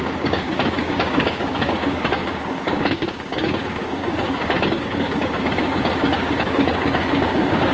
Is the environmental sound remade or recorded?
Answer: remade